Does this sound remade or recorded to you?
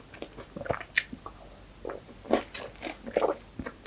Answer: recorded